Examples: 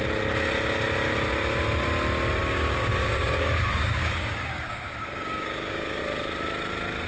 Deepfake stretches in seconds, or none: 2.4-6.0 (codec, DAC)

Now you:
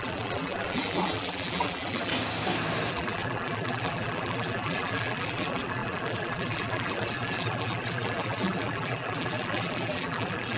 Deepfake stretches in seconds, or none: 0.0-2.1 (vocoder, BigVGAN v2); 2.9-10.6

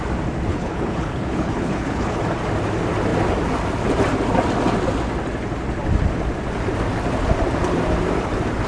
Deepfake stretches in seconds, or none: 0.5-2.2 (codec, HILCodec)

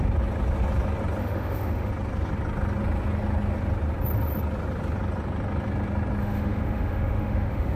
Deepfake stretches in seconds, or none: 1.2-1.9 (autoencoder, DAC-VAE); 6.2-7.8